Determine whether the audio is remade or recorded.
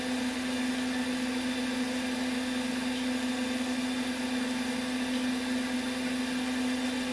recorded